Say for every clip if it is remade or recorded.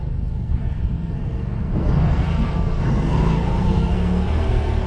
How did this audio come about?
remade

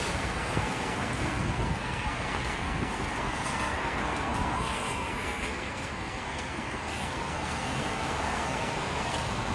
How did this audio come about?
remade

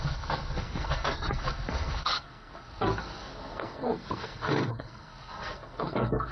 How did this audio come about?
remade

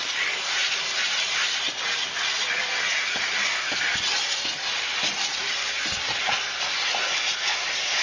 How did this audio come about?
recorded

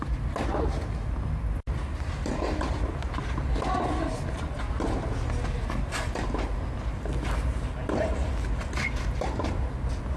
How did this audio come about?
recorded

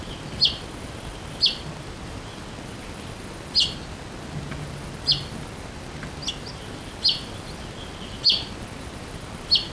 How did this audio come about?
recorded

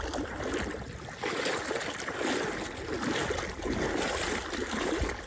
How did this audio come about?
recorded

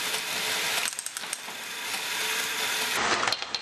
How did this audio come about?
recorded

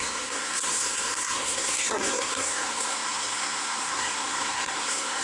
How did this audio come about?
remade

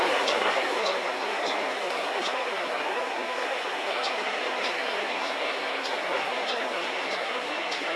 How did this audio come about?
remade